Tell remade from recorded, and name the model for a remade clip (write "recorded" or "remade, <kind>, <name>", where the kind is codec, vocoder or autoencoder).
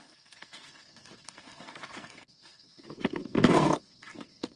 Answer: remade, codec, SNAC